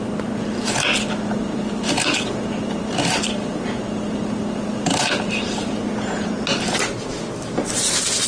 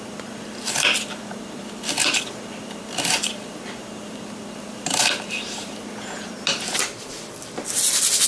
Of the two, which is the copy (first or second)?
second